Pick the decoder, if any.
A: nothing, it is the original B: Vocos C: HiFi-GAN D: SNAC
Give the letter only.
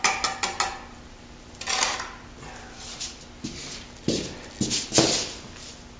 A